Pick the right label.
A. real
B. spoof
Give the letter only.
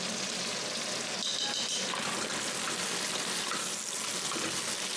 A